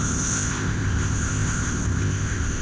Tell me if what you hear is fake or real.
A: fake